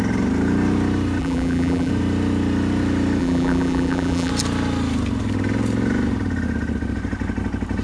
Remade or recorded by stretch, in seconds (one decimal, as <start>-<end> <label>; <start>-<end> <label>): 0.0-1.2 recorded; 1.2-1.9 remade; 1.9-3.2 recorded; 3.2-4.3 remade; 4.3-7.8 recorded